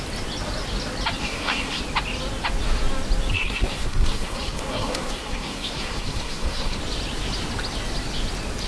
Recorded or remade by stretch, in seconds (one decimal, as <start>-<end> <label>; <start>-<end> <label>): 0.0-1.2 recorded; 1.2-1.8 remade; 1.8-3.3 recorded; 3.3-6.8 remade; 6.8-8.7 recorded